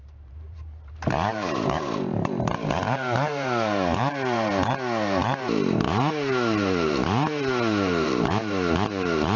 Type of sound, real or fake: fake